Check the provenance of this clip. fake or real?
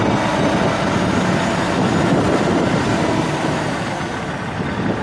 real